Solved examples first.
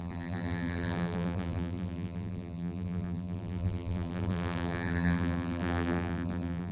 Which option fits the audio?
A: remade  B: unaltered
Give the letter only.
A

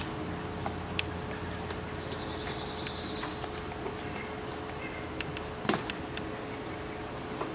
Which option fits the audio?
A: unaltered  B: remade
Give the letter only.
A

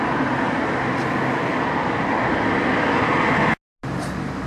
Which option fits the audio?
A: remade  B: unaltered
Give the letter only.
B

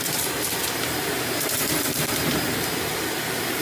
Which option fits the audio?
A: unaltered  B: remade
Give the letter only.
B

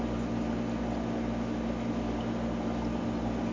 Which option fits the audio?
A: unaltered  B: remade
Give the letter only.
A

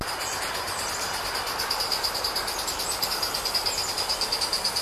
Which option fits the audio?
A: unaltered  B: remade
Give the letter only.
B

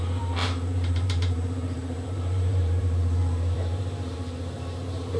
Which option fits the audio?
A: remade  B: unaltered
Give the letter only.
A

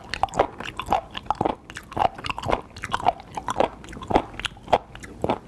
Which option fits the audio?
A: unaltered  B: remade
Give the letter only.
A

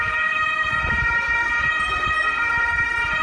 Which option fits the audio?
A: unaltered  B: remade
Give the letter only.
A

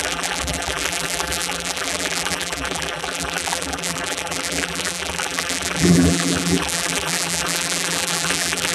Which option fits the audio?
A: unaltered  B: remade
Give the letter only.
B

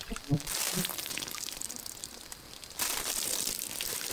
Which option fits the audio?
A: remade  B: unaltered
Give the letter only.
A